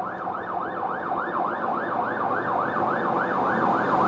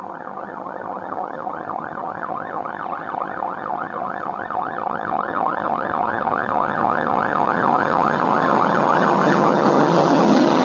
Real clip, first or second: first